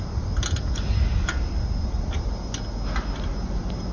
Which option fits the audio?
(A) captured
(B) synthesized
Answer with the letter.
A